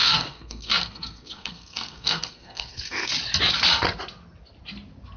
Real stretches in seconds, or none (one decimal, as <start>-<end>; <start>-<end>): 3.1-5.2